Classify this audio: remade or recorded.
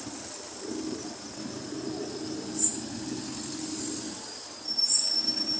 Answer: recorded